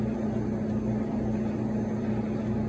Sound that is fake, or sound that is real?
real